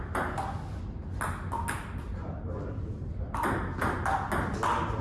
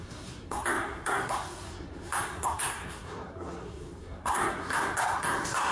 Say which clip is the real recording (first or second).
first